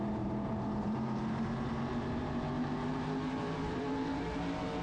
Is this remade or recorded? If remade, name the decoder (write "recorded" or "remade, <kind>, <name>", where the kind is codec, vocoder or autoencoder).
remade, vocoder, BigVGAN v2